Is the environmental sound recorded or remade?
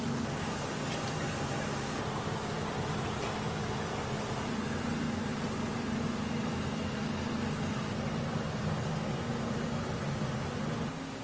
recorded